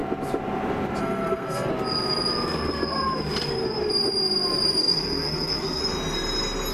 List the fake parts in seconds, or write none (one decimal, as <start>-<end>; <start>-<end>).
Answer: 1.0-1.7; 4.8-5.8